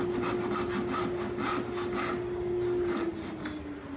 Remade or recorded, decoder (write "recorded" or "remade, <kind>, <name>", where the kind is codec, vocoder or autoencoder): recorded